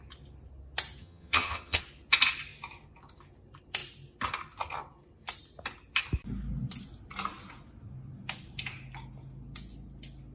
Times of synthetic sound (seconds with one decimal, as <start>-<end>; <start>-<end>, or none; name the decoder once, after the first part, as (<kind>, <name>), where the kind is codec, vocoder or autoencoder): 1.0-1.8 (vocoder, HiFi-GAN)